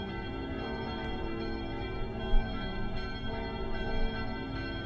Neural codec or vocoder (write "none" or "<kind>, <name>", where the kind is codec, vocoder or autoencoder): none